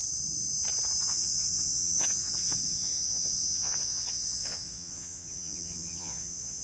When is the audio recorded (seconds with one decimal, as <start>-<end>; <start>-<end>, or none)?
0.0-1.0